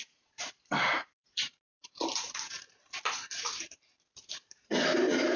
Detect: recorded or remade remade